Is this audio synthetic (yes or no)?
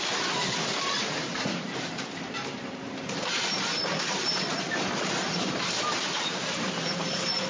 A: yes